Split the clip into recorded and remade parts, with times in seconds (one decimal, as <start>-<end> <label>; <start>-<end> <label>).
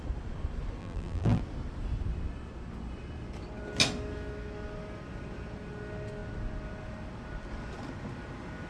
0.0-0.8 recorded; 0.8-1.4 remade; 1.4-8.7 recorded